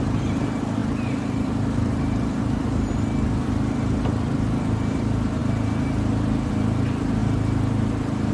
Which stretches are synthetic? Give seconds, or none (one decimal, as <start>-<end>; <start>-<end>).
0.8-3.0